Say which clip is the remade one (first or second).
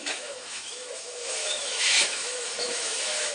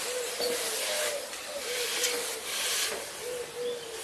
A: first